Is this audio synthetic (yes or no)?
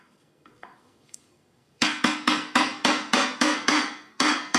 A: yes